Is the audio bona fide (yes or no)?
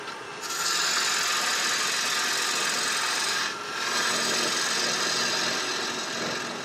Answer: yes